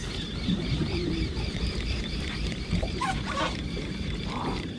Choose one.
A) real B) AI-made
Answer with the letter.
B